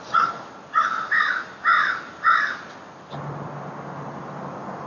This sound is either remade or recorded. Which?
recorded